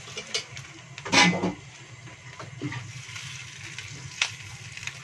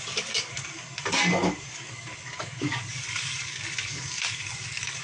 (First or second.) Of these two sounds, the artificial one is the second